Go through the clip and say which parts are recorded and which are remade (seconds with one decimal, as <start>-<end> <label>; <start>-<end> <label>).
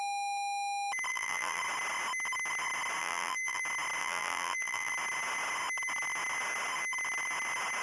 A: 0.0-1.1 recorded; 1.1-1.6 remade; 1.6-3.0 recorded; 3.0-3.6 remade; 3.6-4.0 recorded; 4.0-4.9 remade; 4.9-7.8 recorded